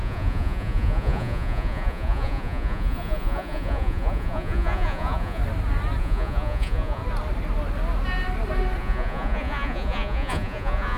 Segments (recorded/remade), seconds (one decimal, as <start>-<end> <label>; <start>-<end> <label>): 0.0-5.4 remade; 5.4-6.0 recorded; 6.0-7.0 remade; 7.0-8.8 recorded; 8.8-11.0 remade